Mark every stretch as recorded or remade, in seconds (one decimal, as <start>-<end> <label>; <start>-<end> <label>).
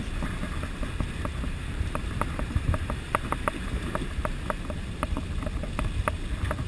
0.0-1.3 recorded; 1.3-5.3 remade; 5.3-6.7 recorded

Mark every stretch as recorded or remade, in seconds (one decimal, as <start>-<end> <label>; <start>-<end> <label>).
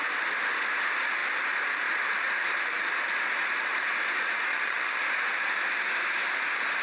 0.0-4.5 recorded; 4.5-5.0 remade; 5.0-6.8 recorded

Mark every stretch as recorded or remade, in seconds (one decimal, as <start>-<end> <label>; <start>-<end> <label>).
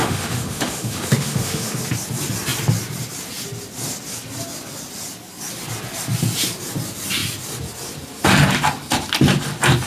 0.0-1.8 remade; 1.8-9.9 recorded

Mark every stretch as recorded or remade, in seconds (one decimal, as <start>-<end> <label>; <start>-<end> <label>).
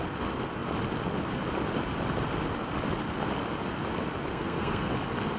0.0-4.3 recorded; 4.3-4.9 remade; 4.9-5.4 recorded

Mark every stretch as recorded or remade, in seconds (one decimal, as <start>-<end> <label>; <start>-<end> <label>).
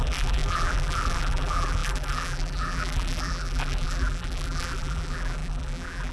0.0-6.1 remade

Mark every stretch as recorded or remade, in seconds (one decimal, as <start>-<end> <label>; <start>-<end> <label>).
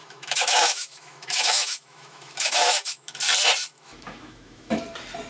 0.0-3.2 remade; 3.2-3.7 recorded; 3.7-4.8 remade; 4.8-5.3 recorded